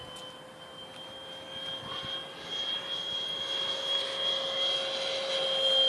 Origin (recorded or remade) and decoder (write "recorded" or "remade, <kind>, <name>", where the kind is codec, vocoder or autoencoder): recorded